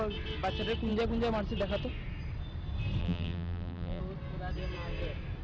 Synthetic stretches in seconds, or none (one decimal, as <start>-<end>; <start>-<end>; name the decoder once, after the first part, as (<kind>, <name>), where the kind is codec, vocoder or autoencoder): 3.0-4.0 (vocoder, BigVGAN v2)